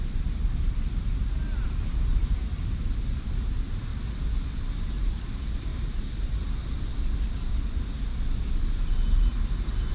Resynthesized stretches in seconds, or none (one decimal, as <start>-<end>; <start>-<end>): 0.0-3.9; 4.6-8.1; 9.2-9.9